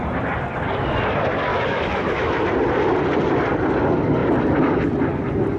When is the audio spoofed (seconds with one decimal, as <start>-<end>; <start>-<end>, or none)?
1.5-2.4